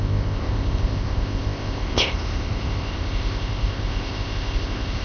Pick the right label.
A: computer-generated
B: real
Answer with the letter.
A